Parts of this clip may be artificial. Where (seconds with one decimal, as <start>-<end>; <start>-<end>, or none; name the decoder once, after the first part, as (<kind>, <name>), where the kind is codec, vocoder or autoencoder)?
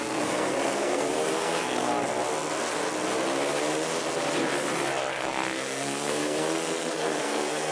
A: 0.0-1.9 (codec, SNAC); 5.1-7.7